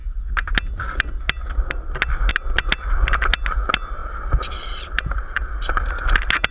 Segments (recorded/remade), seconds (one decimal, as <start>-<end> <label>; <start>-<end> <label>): 0.0-4.0 recorded; 4.0-5.2 remade; 5.2-6.5 recorded